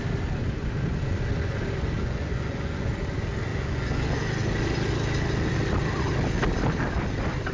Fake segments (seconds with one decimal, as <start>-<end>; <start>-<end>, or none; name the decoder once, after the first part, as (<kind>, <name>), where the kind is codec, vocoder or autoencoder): 2.0-2.9 (vocoder, Vocos); 3.5-4.2